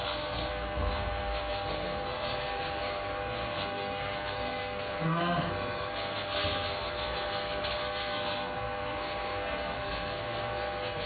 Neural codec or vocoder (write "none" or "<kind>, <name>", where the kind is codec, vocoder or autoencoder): codec, SNAC